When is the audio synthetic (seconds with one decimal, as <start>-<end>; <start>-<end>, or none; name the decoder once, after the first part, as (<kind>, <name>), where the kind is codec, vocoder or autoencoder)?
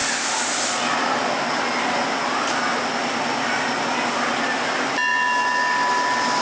none